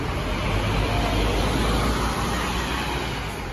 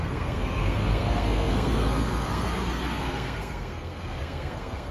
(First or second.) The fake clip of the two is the second